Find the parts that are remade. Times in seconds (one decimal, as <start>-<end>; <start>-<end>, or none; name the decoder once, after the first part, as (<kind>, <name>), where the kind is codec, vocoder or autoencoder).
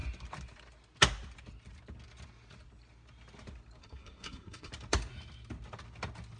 3.8-4.7 (codec, SNAC)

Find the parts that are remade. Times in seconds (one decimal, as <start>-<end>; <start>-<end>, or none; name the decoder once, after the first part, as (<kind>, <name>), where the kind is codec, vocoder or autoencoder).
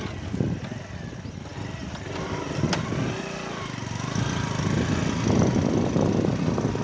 none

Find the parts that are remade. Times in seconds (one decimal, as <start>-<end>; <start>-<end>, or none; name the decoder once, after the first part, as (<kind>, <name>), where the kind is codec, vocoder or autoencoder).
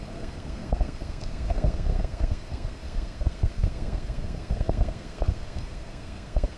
0.0-6.6 (codec, SNAC)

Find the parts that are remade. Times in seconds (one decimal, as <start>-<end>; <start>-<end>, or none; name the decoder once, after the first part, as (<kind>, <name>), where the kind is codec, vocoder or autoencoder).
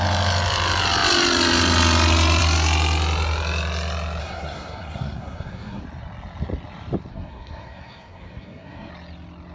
4.2-5.8 (codec, SNAC); 7.1-8.9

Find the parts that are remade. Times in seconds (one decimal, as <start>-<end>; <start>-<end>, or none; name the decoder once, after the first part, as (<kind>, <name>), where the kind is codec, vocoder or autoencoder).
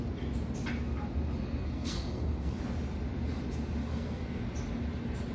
1.6-2.6 (codec, SNAC); 3.8-4.4